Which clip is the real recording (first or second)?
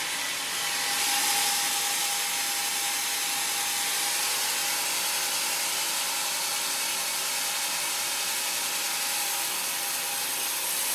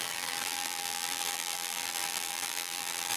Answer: first